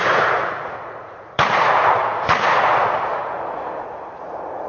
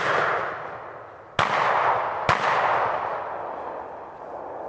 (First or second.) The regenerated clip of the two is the first